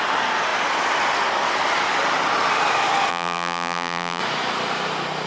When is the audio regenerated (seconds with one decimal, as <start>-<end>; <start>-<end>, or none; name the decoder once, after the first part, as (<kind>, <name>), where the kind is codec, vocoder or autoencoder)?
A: 3.1-4.2 (vocoder, BigVGAN v2)